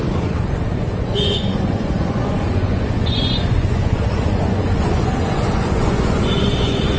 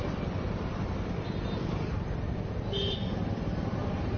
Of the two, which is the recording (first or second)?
second